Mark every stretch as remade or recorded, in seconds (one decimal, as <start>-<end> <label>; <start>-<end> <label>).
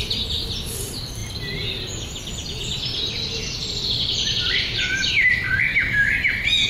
0.0-1.2 recorded; 1.2-1.7 remade; 1.7-3.6 recorded; 3.6-5.3 remade; 5.3-6.7 recorded